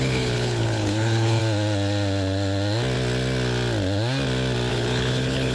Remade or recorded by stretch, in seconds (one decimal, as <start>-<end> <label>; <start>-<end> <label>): 0.0-1.4 remade; 1.4-4.7 recorded; 4.7-5.5 remade